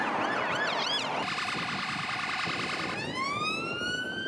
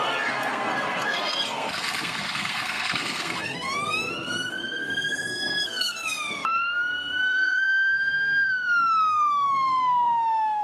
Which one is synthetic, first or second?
second